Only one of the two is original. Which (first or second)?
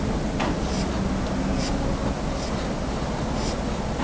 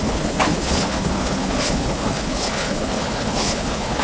first